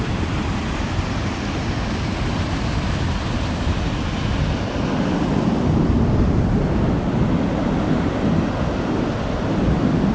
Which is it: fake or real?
real